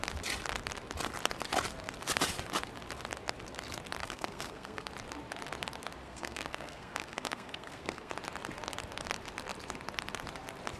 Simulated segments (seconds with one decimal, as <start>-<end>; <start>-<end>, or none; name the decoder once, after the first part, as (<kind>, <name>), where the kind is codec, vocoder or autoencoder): 4.0-4.9 (codec, SNAC); 6.0-8.1